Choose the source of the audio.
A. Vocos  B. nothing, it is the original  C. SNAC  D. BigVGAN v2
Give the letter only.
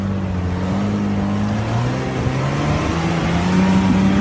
B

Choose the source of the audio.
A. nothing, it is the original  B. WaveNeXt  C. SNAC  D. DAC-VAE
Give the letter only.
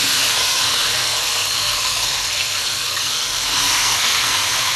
C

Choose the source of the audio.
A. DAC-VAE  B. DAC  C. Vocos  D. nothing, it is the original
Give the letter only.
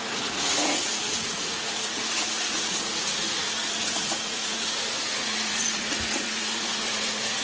C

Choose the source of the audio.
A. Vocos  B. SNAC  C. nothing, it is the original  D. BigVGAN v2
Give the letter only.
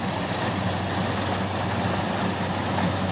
C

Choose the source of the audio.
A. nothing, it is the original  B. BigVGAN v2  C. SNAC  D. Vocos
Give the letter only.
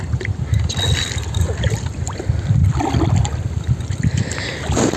A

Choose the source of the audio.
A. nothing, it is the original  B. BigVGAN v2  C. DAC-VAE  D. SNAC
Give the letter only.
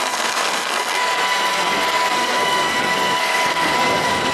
D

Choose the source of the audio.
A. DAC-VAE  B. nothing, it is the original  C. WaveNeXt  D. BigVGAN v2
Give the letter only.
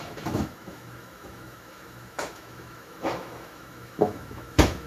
A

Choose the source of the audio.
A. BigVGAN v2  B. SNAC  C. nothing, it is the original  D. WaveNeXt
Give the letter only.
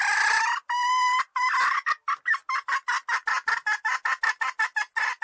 C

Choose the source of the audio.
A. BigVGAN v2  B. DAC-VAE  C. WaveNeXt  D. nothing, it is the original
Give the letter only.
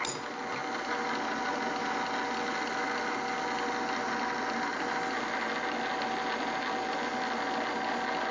D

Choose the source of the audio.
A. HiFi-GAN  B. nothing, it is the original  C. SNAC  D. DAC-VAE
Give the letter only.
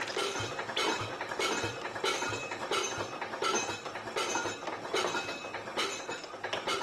B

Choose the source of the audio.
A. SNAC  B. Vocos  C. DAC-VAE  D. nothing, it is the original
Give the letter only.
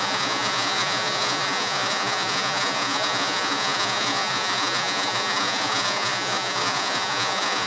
B